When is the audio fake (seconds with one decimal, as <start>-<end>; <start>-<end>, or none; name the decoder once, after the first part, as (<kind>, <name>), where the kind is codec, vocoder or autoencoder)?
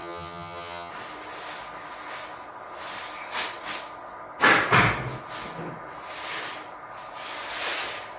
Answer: 0.0-0.9 (vocoder, HiFi-GAN)